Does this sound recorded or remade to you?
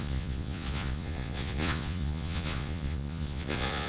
remade